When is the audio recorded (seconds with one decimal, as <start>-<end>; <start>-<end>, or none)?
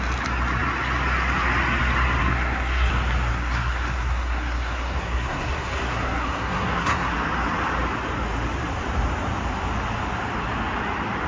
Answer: 0.0-2.2; 2.9-3.3; 7.1-11.3